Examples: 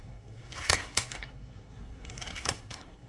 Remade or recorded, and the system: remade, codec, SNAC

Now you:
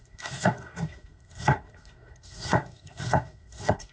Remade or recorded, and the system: remade, codec, SNAC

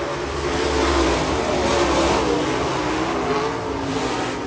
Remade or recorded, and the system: recorded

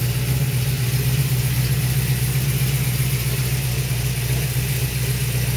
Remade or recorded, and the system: recorded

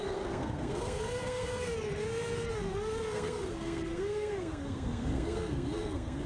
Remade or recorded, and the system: remade, codec, SNAC